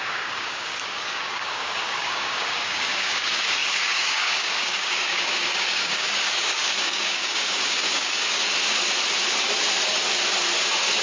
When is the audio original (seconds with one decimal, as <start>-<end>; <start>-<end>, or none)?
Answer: 8.5-11.0

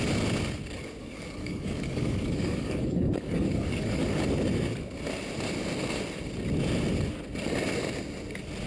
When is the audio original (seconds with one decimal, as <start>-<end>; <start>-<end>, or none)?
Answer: 0.0-1.0; 4.0-8.7